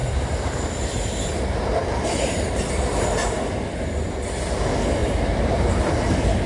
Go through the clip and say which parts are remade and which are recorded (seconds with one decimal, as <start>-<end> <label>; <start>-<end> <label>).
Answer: 0.0-2.7 remade; 2.7-5.0 recorded; 5.0-6.1 remade; 6.1-6.5 recorded